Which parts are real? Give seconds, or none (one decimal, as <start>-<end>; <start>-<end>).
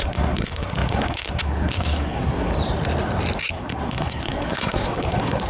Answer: 2.5-3.5